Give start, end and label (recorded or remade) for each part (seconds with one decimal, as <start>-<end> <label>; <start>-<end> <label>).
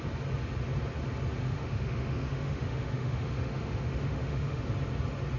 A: 0.0-1.4 recorded; 1.4-4.6 remade; 4.6-5.4 recorded